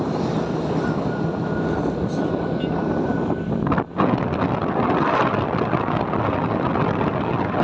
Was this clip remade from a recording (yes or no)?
no